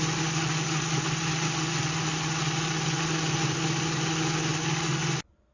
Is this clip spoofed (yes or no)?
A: no